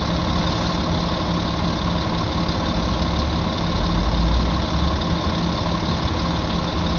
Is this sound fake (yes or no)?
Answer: no